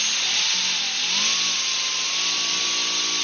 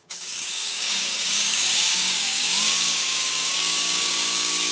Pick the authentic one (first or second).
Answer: first